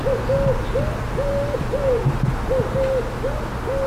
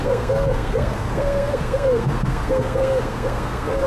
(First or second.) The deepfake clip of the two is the second